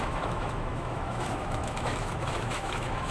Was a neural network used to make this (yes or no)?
yes